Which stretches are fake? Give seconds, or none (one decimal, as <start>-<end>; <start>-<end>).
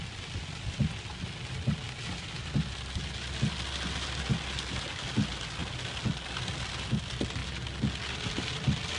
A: none